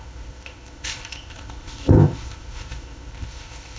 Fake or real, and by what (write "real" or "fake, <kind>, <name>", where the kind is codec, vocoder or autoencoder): fake, codec, ZipCodec